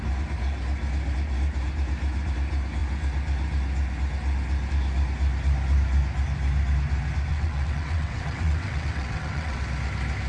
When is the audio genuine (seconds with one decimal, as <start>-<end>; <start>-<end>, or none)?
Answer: 0.0-7.3; 9.6-10.3